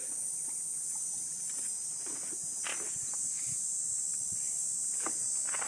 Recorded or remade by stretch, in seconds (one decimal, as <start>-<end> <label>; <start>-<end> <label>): 0.0-2.0 remade; 2.0-5.7 recorded